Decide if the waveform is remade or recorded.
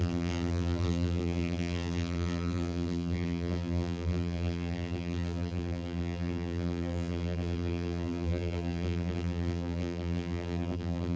remade